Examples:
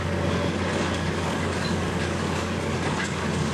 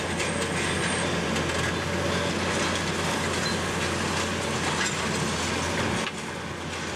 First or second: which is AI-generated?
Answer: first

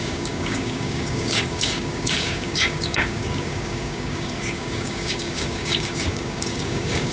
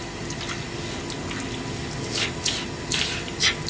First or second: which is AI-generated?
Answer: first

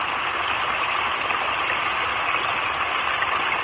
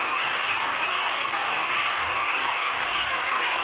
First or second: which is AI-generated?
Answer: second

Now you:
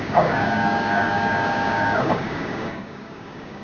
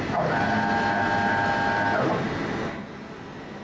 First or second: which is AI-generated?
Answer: first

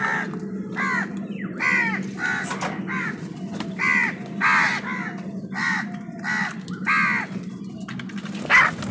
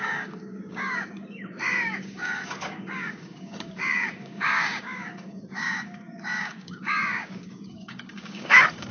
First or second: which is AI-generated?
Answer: second